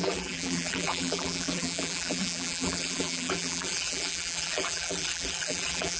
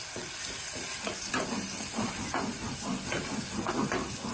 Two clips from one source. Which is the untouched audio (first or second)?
second